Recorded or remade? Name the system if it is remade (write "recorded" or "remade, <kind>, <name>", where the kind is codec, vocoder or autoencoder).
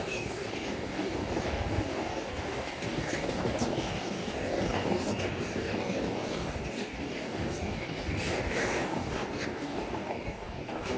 remade, codec, DAC